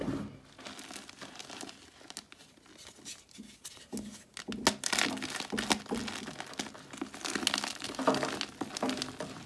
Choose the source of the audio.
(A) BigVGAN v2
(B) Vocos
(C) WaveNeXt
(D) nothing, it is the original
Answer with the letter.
D